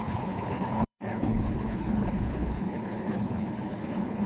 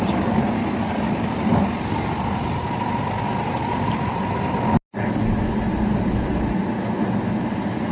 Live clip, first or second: second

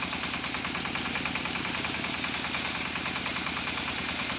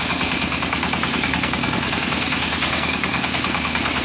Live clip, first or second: first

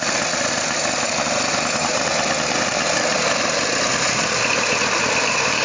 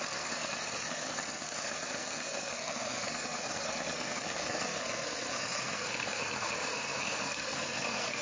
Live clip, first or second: first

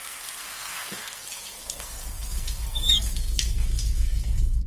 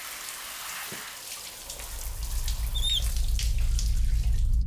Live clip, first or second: second